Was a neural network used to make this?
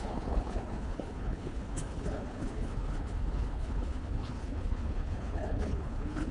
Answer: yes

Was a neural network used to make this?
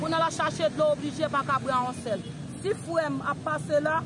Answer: no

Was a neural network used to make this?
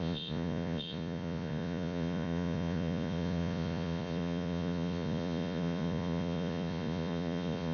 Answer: yes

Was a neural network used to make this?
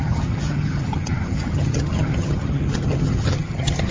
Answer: yes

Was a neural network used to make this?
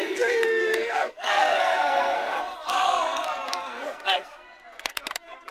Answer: yes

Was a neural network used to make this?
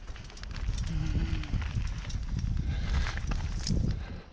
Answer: no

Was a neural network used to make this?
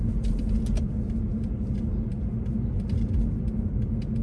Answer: no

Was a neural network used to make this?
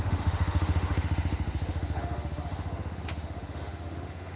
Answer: yes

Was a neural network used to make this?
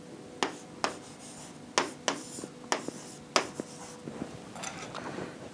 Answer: no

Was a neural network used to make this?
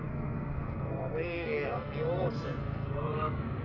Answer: yes